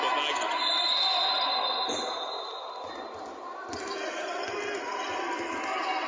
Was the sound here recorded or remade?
recorded